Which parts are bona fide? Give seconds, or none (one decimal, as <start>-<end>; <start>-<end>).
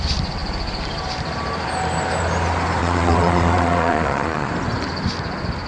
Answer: 0.0-2.8; 4.5-5.7